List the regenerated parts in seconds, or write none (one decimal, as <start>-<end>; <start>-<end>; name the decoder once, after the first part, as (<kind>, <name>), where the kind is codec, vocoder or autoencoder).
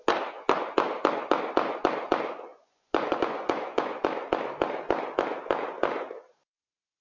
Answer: 2.5-4.0 (vocoder, Vocos)